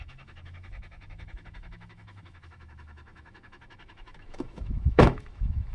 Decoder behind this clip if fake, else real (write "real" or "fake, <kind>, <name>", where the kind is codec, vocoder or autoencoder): fake, autoencoder, DAC-VAE